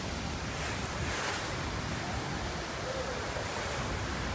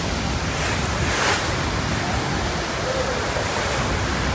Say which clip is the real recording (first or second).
second